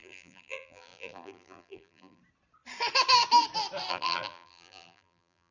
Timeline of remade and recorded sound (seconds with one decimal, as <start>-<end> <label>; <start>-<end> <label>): 0.0-2.2 remade; 2.2-3.9 recorded; 3.9-5.5 remade

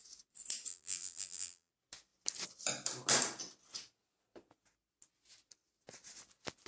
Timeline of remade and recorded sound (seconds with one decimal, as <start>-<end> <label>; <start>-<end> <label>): 0.0-0.7 recorded; 0.7-1.7 remade; 1.7-6.7 recorded

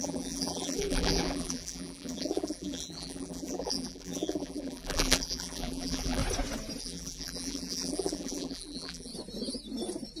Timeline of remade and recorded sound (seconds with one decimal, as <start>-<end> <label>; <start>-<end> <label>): 0.0-6.2 remade; 6.2-6.8 recorded; 6.8-9.1 remade; 9.1-10.2 recorded

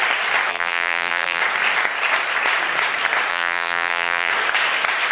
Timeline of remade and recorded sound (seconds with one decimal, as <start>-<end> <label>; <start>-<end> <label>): 0.0-0.5 recorded; 0.5-1.4 remade; 1.4-3.3 recorded; 3.3-4.3 remade; 4.3-5.1 recorded